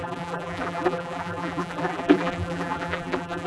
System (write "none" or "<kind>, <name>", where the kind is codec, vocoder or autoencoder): vocoder, BigVGAN v2